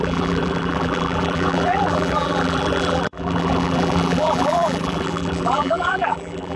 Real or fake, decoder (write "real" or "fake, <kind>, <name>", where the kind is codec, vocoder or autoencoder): fake, vocoder, BigVGAN v2